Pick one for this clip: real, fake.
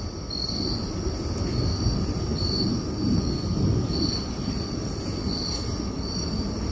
real